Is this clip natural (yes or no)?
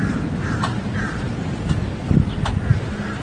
yes